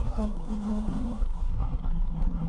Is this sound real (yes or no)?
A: no